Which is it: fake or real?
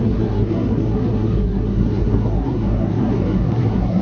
fake